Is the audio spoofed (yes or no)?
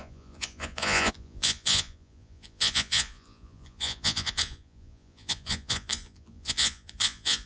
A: yes